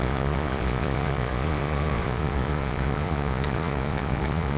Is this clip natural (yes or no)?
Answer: no